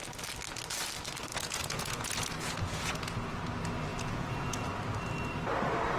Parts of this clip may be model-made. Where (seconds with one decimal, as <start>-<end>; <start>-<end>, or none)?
1.3-3.4; 3.9-4.7